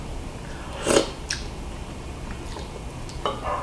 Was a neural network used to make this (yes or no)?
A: no